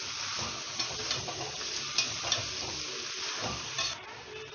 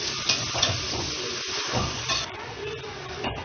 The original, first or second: first